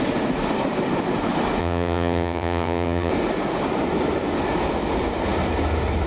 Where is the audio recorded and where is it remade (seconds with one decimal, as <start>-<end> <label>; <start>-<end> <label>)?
0.0-1.6 recorded; 1.6-3.1 remade; 3.1-6.1 recorded